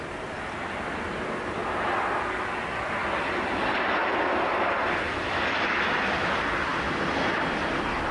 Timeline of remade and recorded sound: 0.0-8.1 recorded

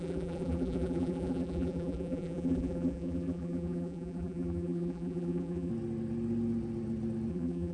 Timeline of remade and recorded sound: 0.0-5.7 remade; 5.7-7.3 recorded; 7.3-7.7 remade

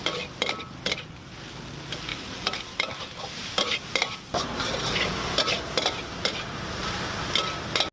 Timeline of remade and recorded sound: 0.0-2.1 recorded; 2.1-4.9 remade; 4.9-7.9 recorded

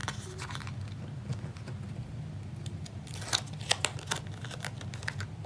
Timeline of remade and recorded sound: 0.0-5.5 recorded

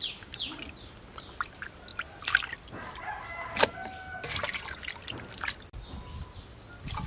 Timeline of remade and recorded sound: 0.0-1.9 recorded; 1.9-3.1 remade; 3.1-7.1 recorded

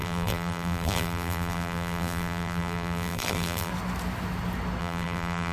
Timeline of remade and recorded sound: 0.0-3.7 remade; 3.7-4.8 recorded; 4.8-5.5 remade